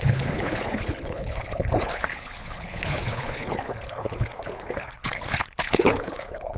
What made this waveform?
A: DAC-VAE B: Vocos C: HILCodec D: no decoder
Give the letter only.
C